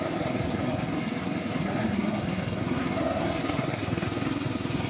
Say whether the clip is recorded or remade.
remade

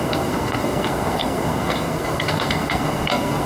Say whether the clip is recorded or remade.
remade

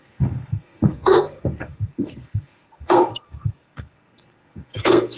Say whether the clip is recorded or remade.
remade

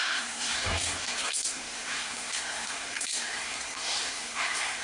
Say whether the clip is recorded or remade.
remade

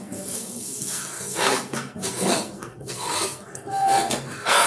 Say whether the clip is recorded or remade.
remade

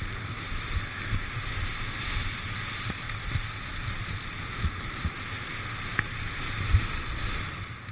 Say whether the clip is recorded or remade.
recorded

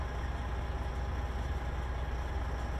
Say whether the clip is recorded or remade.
recorded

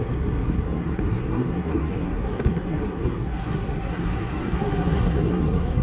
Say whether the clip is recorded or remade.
remade